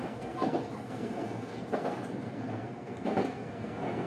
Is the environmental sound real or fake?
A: fake